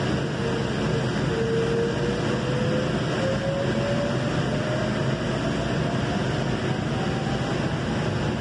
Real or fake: real